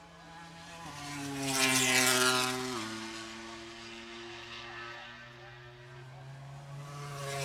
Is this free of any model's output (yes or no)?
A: yes